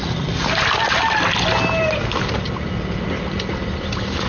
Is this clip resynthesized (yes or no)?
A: no